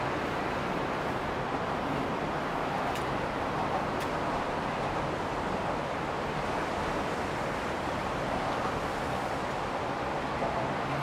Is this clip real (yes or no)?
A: yes